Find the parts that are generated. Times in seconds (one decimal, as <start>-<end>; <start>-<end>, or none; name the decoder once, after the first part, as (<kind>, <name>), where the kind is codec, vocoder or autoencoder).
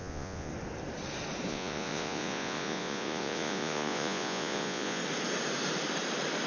0.0-0.5 (vocoder, Vocos); 1.5-5.0